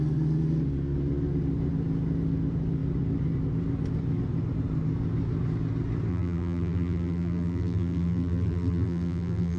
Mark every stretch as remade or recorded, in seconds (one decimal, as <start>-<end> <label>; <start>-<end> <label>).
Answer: 0.0-6.1 recorded; 6.1-9.6 remade